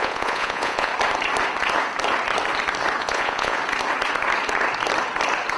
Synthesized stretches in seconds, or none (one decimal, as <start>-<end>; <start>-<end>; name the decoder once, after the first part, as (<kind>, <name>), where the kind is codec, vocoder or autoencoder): 0.0-0.9 (vocoder, Vocos); 3.0-3.6